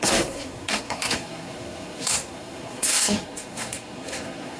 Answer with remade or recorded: remade